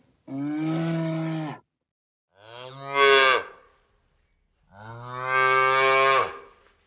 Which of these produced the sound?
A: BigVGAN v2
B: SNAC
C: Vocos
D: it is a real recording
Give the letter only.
D